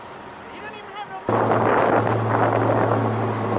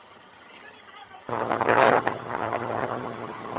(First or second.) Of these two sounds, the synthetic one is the second